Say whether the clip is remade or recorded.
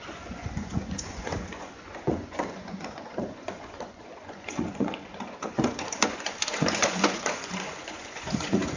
remade